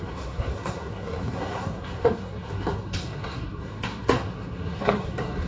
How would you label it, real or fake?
fake